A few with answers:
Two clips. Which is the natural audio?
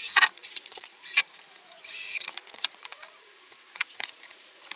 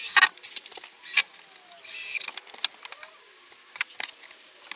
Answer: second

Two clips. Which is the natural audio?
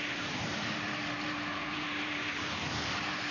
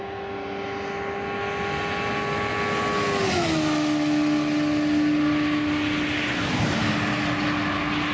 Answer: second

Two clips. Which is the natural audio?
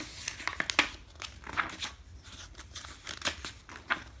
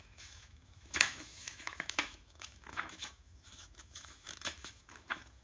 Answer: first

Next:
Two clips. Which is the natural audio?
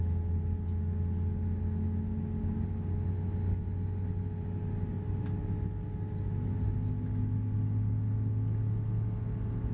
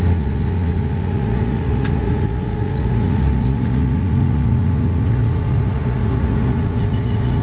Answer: first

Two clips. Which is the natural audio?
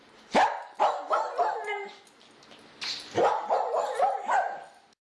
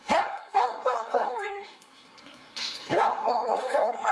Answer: first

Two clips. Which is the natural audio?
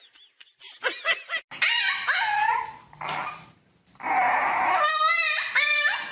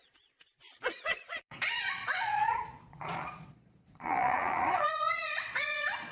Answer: first